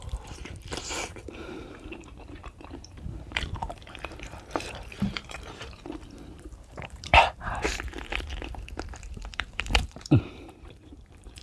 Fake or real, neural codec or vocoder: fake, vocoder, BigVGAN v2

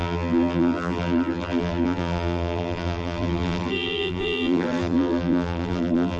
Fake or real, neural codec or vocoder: fake, vocoder, BigVGAN v2